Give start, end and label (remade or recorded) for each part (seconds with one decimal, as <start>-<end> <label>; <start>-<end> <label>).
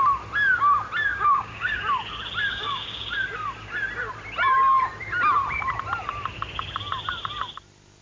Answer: 0.0-1.1 recorded; 1.1-1.8 remade; 1.8-2.5 recorded; 2.5-3.1 remade; 3.1-8.0 recorded